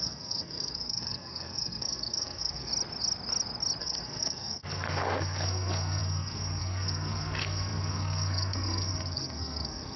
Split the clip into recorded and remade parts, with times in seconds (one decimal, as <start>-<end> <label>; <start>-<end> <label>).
0.0-2.7 remade; 2.7-3.8 recorded; 3.8-10.0 remade

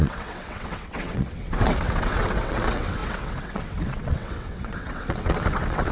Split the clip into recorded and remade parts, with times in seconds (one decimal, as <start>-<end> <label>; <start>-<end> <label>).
0.0-5.9 remade

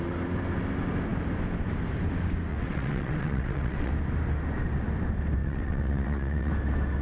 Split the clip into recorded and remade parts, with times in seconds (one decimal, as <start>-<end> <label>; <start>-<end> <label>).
0.0-2.5 recorded; 2.5-3.9 remade; 3.9-5.4 recorded; 5.4-6.5 remade; 6.5-7.0 recorded

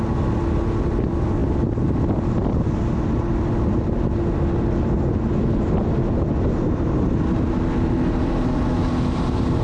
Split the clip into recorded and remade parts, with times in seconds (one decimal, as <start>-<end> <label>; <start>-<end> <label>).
0.0-9.6 recorded

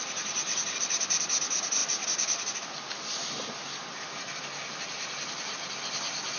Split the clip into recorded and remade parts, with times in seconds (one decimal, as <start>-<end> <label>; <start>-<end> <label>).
0.0-6.4 recorded